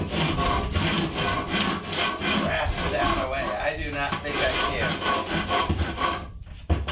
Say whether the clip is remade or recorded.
recorded